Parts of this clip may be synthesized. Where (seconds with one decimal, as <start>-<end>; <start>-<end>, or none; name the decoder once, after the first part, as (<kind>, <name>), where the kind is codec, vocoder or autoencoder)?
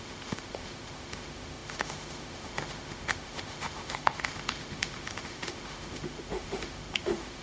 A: 0.0-7.4 (autoencoder, DAC-VAE)